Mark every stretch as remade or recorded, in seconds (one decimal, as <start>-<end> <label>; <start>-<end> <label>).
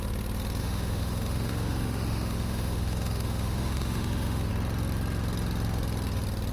0.0-0.6 recorded; 0.6-4.5 remade; 4.5-6.5 recorded